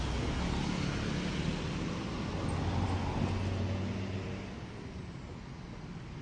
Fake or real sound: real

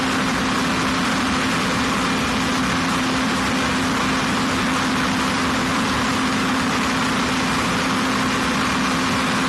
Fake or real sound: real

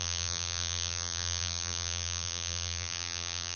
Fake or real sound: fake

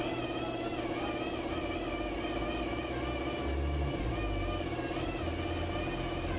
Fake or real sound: real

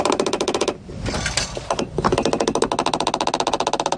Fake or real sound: real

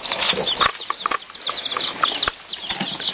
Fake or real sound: real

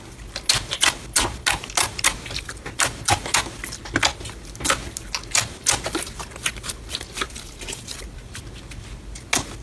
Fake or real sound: real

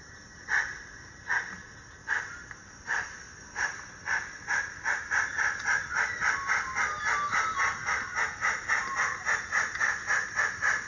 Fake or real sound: real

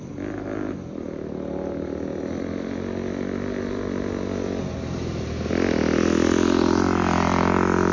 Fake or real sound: real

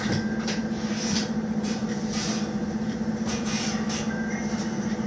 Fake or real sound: fake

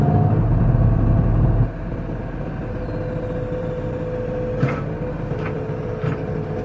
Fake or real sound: real